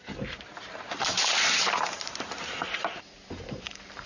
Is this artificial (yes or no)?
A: yes